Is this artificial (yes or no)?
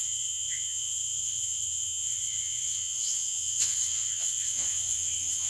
yes